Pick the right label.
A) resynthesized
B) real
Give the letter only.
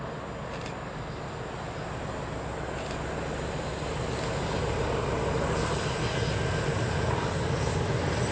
B